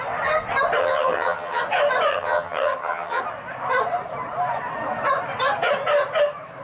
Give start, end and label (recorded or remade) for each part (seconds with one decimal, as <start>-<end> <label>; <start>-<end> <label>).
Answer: 0.0-0.8 recorded; 0.8-1.6 remade; 1.6-2.1 recorded; 2.1-3.2 remade; 3.2-6.6 recorded